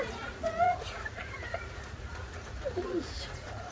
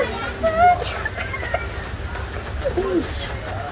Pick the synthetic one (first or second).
first